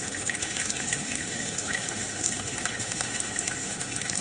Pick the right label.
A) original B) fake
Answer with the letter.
B